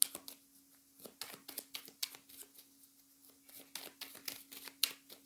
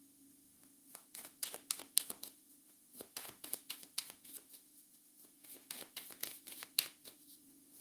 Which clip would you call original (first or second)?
first